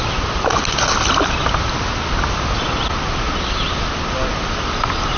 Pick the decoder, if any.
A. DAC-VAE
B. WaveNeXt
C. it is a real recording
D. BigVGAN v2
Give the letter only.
C